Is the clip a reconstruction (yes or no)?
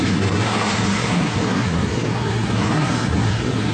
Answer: yes